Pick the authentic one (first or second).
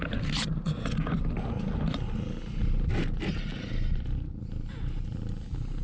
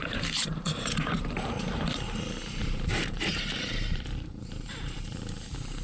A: first